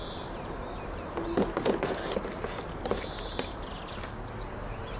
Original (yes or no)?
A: yes